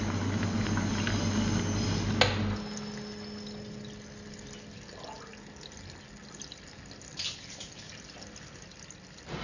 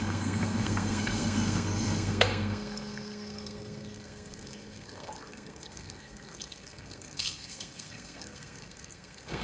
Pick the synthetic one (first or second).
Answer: second